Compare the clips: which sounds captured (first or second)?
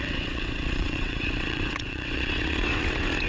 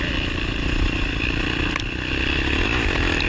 second